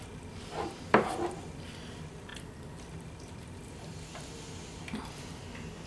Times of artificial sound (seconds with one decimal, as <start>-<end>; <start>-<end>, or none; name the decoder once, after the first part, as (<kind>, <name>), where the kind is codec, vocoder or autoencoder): none